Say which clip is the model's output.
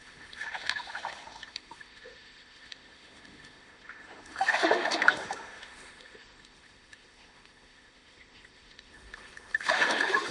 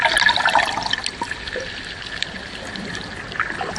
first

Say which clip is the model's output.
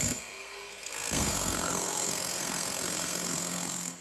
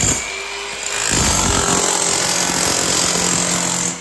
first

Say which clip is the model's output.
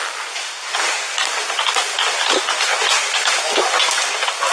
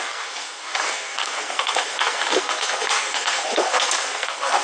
second